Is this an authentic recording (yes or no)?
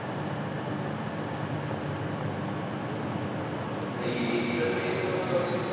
yes